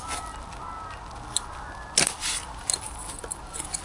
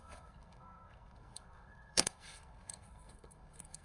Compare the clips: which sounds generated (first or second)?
second